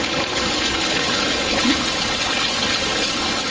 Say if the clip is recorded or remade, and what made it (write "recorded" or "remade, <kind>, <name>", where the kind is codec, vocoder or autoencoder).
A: remade, codec, HILCodec